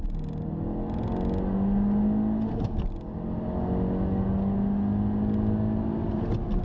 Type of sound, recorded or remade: recorded